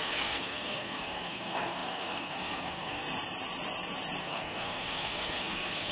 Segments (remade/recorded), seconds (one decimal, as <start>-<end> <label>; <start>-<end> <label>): 0.0-3.0 remade; 3.0-4.2 recorded; 4.2-5.9 remade